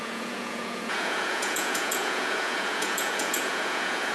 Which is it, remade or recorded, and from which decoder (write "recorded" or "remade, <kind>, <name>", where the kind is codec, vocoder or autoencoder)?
remade, vocoder, Vocos